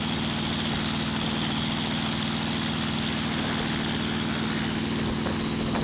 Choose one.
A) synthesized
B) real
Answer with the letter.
B